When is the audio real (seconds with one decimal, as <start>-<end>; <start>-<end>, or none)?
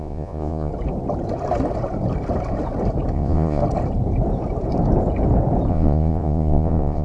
0.7-3.1; 3.6-5.7